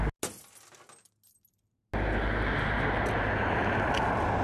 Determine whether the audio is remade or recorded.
recorded